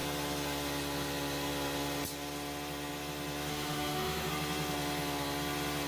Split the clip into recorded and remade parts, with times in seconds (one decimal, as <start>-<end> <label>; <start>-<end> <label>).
0.0-3.5 recorded; 3.5-4.3 remade; 4.3-5.9 recorded